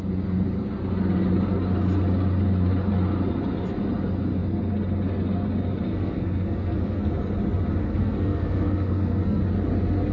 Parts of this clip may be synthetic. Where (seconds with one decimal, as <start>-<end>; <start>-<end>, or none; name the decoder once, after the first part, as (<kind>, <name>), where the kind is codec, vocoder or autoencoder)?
5.9-7.1 (codec, SNAC); 7.8-9.4